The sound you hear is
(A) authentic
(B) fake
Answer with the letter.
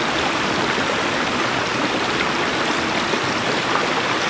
A